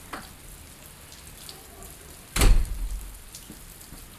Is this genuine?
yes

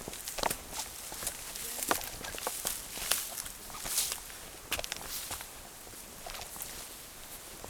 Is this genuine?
yes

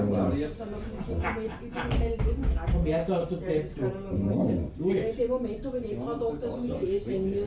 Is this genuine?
yes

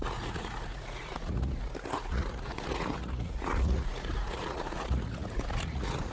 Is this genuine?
no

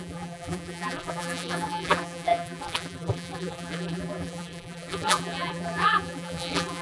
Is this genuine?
no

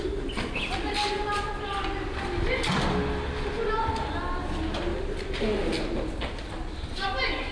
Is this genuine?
yes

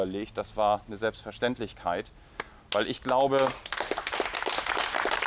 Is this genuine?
yes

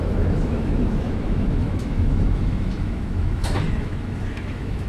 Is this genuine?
no